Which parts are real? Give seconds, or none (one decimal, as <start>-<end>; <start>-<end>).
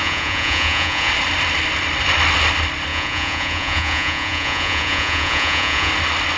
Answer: 1.1-2.9; 5.9-6.4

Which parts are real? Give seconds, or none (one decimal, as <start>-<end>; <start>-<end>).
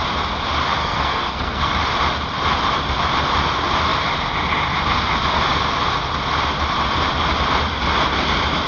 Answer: 0.0-0.8; 1.8-8.7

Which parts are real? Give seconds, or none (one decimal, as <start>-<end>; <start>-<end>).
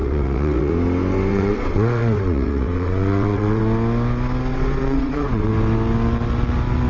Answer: 0.7-1.3; 3.6-4.5; 5.5-6.9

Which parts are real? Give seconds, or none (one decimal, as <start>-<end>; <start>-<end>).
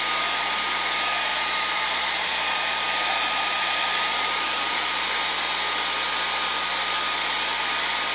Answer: 0.0-1.3; 5.3-8.1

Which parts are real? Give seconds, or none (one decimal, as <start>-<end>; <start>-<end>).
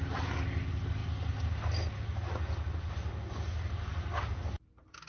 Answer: 0.0-5.1